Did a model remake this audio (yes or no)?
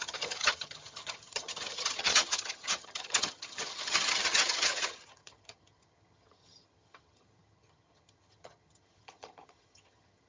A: yes